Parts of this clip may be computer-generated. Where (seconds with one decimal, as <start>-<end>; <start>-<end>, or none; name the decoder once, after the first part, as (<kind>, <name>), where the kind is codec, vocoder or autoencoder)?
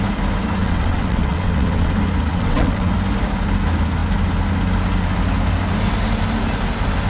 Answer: 0.6-1.9 (vocoder, WaveNeXt); 2.3-2.9